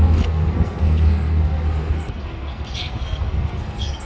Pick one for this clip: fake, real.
fake